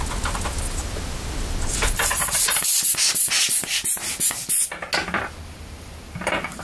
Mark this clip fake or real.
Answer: real